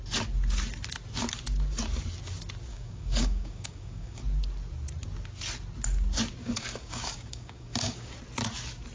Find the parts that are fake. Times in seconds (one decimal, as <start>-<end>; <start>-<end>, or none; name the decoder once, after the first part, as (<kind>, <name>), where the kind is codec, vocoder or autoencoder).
2.7-4.2 (codec, DAC); 6.4-8.1